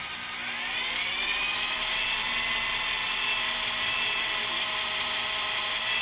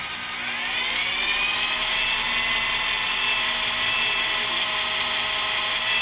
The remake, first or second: first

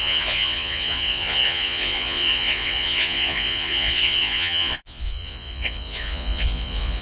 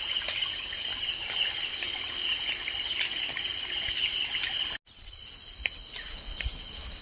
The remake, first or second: first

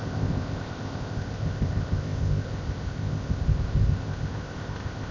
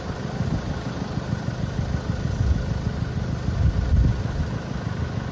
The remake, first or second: first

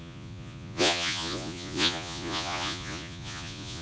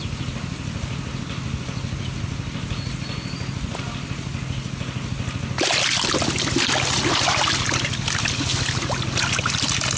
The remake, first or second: first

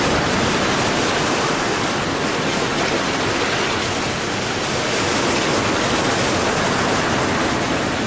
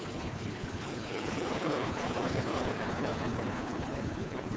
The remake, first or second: second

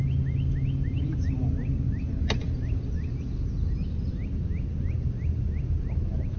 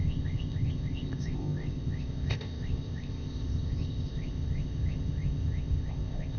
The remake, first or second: second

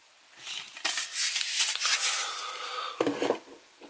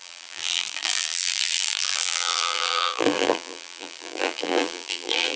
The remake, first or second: second